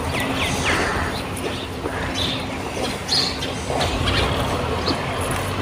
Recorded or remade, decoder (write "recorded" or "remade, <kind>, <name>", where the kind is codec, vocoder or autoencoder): recorded